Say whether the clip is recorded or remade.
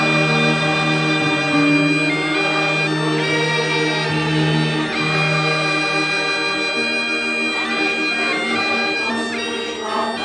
recorded